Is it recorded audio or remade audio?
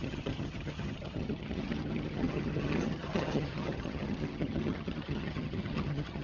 remade